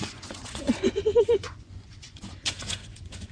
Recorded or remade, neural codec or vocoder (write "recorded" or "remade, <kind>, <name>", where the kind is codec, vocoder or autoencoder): remade, vocoder, Vocos